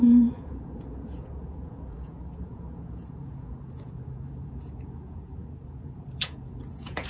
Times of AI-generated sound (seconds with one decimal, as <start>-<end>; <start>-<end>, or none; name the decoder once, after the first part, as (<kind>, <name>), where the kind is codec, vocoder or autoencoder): 0.0-7.1 (vocoder, Vocos)

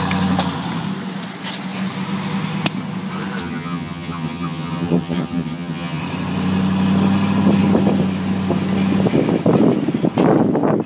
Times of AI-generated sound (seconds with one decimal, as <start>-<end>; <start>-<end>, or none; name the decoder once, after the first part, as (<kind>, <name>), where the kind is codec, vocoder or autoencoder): 3.4-6.0 (vocoder, HiFi-GAN)

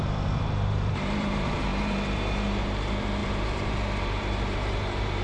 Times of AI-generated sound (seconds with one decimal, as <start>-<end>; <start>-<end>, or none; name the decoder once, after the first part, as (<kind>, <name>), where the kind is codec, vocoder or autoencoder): 0.0-5.2 (vocoder, BigVGAN v2)